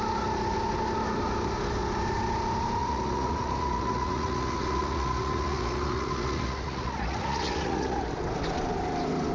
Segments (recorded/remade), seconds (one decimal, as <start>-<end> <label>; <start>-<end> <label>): 0.0-2.8 recorded; 2.8-8.0 remade; 8.0-9.3 recorded